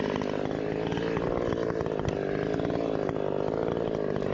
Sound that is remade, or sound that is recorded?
recorded